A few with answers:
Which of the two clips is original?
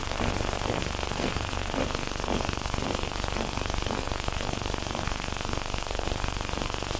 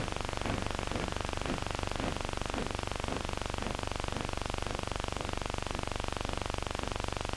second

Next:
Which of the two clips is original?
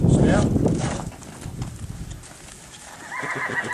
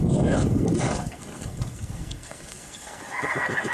first